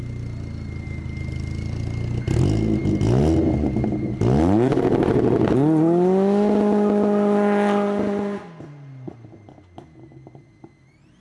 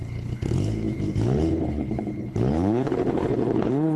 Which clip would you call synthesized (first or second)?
second